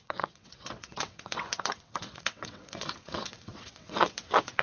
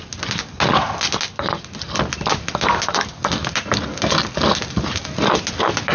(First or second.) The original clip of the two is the second